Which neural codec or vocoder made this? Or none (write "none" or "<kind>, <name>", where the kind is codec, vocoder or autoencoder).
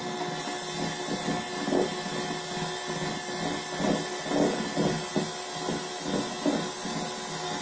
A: none